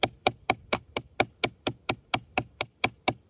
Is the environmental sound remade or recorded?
recorded